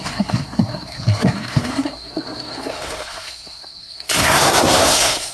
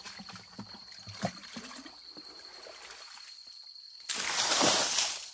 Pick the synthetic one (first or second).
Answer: first